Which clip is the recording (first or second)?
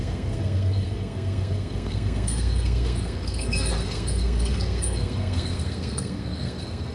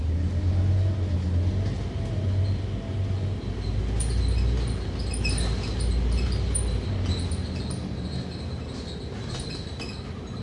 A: second